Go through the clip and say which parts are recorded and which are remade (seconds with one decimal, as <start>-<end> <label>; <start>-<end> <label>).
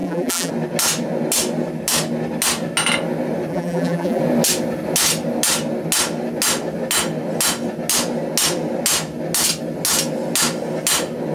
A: 0.0-0.5 remade; 0.5-3.5 recorded; 3.5-4.2 remade; 4.2-11.3 recorded